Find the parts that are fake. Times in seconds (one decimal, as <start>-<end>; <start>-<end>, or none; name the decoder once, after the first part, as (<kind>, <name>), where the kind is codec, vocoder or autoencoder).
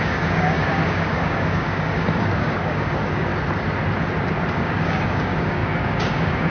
0.0-3.3 (codec, DAC); 4.5-6.5